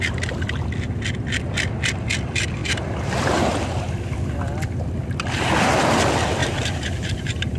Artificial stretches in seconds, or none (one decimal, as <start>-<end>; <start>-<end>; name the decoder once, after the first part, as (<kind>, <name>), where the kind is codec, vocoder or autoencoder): 2.6-3.3 (vocoder, BigVGAN v2); 6.4-7.6